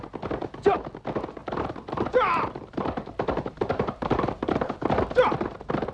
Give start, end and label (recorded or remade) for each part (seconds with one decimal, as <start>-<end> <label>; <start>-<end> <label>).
0.0-1.4 recorded; 1.4-4.9 remade; 4.9-5.9 recorded